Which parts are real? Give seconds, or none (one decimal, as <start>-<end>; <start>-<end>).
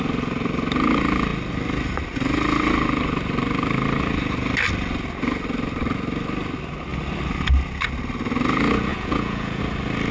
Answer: 0.0-8.9; 9.6-10.1